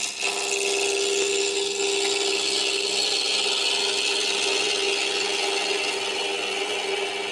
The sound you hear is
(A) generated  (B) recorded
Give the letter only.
B